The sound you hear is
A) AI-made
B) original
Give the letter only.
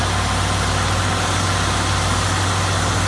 B